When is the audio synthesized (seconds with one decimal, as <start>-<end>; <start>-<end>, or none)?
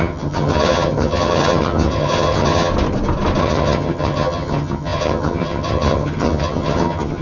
0.0-2.7; 3.4-7.2